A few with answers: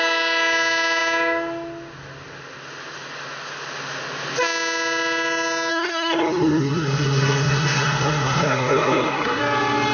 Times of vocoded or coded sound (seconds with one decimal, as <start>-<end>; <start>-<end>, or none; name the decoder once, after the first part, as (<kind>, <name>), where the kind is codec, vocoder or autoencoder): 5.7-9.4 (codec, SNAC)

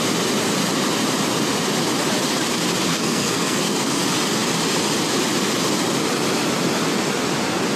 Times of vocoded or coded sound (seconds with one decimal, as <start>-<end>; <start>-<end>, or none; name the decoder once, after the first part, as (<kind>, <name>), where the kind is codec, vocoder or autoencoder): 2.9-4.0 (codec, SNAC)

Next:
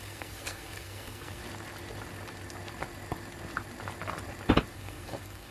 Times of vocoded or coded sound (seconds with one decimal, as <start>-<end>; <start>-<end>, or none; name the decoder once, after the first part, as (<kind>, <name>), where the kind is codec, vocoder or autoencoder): 0.0-1.4 (codec, SNAC); 4.7-5.5

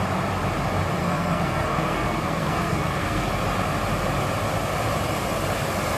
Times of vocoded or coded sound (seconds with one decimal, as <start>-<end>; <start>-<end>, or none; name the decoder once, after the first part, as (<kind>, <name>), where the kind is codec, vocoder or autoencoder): 1.0-3.3 (codec, SNAC)

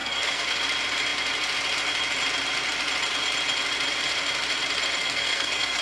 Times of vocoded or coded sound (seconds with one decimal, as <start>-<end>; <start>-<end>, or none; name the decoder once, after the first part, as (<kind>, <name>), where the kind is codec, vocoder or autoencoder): 0.0-0.6 (codec, SNAC); 5.0-5.8

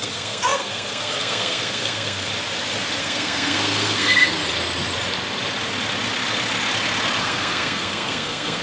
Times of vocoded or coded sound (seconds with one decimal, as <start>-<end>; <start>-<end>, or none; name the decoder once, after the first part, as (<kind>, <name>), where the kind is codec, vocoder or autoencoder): 0.0-2.3 (codec, SNAC); 3.0-4.4; 7.2-8.6

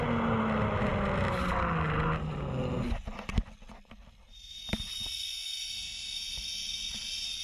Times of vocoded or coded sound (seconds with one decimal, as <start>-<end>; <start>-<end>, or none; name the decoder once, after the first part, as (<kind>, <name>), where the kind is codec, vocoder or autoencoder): none

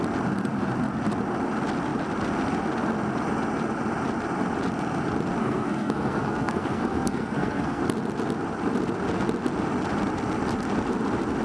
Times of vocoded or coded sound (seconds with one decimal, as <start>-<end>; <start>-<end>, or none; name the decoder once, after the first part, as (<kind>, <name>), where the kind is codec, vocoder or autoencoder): 5.4-7.8 (codec, SNAC)